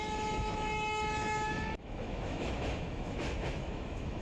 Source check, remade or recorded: remade